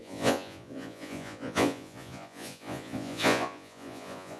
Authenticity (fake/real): fake